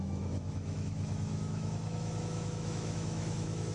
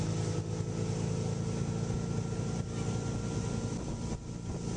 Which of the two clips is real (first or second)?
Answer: second